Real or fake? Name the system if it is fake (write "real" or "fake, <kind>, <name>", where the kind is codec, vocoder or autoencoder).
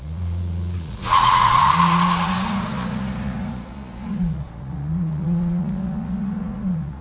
fake, vocoder, Vocos